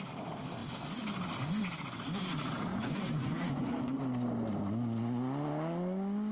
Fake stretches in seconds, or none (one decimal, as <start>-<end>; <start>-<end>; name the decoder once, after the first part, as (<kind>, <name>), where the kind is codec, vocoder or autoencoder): 2.7-4.0 (vocoder, Vocos)